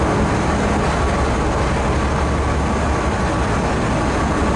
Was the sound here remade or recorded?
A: recorded